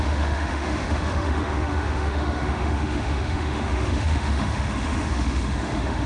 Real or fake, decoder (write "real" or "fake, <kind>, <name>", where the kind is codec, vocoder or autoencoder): fake, autoencoder, DAC-VAE